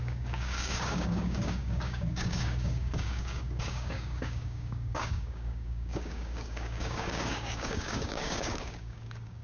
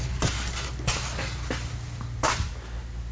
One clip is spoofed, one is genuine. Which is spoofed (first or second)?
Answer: first